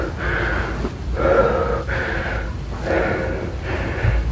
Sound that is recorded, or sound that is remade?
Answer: recorded